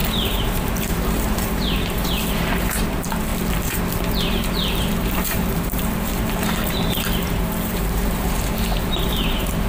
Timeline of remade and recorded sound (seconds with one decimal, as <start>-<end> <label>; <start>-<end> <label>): 0.0-3.3 remade; 3.3-4.3 recorded; 4.3-9.7 remade